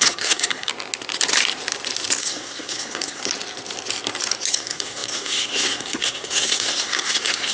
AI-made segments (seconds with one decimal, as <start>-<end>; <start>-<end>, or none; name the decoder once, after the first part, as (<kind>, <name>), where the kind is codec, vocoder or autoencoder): 0.0-0.7 (codec, SNAC); 2.2-3.2; 4.5-7.5